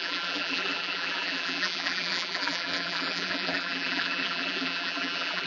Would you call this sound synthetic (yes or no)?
yes